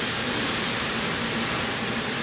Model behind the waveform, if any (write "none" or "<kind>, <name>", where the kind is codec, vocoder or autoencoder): vocoder, BigVGAN v2